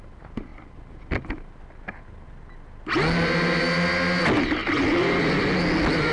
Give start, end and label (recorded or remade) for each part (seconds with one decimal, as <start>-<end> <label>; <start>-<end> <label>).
0.0-6.1 recorded